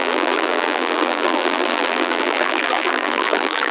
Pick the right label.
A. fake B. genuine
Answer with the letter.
A